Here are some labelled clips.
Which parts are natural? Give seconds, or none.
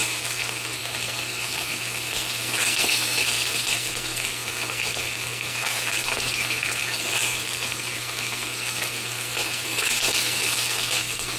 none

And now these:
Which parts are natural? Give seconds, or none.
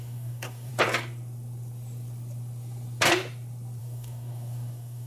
0.7-3.8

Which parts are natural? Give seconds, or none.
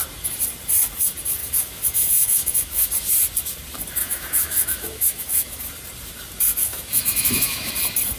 0.0-1.4; 2.9-4.0; 5.7-6.6; 7.7-8.2